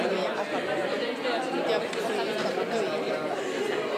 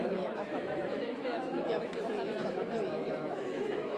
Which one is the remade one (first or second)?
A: second